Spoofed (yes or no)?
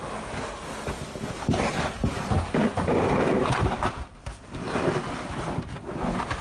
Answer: no